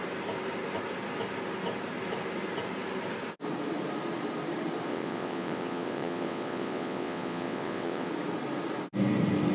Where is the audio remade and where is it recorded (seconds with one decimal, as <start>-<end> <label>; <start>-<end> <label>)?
0.0-4.9 recorded; 4.9-8.1 remade; 8.1-9.5 recorded